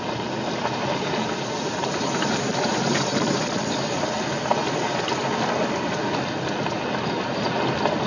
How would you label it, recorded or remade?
recorded